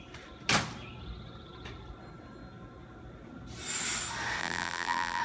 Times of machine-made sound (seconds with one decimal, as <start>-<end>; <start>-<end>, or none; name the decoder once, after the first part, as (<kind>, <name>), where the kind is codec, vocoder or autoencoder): 4.4-5.2 (vocoder, BigVGAN v2)